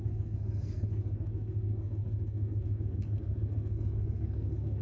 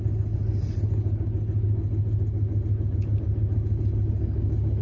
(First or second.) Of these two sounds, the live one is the second